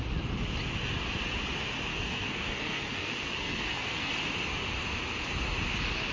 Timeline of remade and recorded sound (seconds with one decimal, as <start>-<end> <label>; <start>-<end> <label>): 0.0-1.9 recorded; 1.9-4.1 remade; 4.1-6.1 recorded